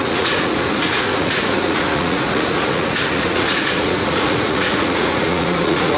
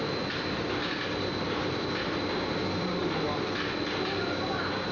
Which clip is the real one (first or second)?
second